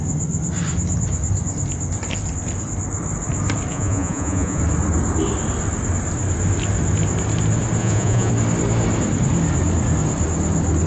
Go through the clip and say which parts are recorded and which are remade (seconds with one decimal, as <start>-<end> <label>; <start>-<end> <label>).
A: 0.0-3.7 recorded; 3.7-4.6 remade; 4.6-7.8 recorded; 7.8-8.3 remade; 8.3-10.9 recorded